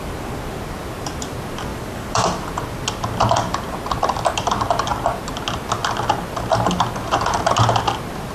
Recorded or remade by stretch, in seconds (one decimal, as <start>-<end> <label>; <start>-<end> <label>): 0.0-1.7 recorded; 1.7-2.4 remade; 2.4-8.3 recorded